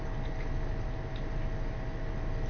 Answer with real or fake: real